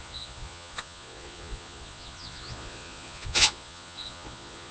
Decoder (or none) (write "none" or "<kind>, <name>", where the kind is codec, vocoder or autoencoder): vocoder, Vocos